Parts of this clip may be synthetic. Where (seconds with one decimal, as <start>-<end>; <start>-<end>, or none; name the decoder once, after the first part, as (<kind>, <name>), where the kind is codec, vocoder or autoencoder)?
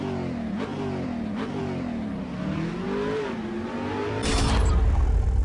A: none